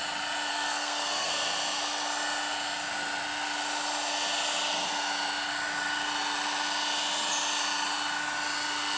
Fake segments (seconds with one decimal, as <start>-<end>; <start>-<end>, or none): 0.5-1.3